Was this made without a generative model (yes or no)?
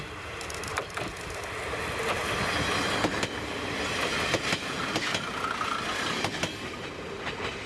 yes